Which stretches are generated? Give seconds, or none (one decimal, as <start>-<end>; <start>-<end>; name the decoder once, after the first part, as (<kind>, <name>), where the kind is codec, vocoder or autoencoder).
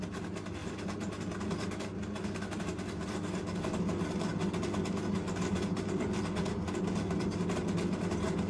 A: none